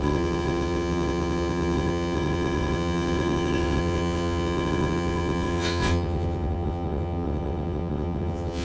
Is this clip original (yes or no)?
no